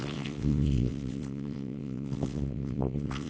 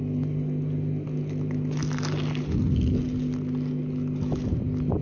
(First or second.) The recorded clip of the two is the second